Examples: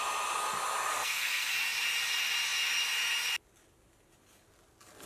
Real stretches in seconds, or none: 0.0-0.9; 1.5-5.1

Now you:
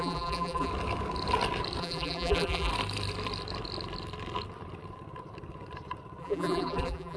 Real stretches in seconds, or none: 0.7-1.8; 2.7-6.2

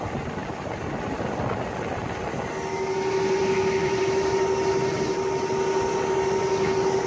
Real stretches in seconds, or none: 0.0-0.4; 1.6-3.4; 4.0-7.1

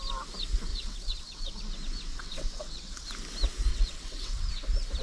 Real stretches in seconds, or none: 0.0-0.7; 1.6-2.1; 3.1-3.7; 4.5-5.0

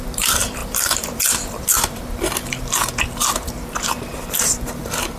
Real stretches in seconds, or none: none